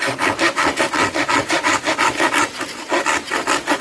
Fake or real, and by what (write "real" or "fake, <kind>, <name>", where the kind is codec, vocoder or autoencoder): fake, vocoder, BigVGAN v2